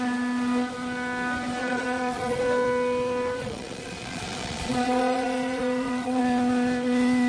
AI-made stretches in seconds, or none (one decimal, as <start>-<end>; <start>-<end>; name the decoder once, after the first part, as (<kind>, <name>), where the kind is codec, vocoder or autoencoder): 1.6-2.4 (vocoder, Vocos); 3.4-6.2